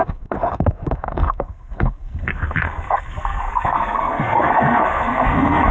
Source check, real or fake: fake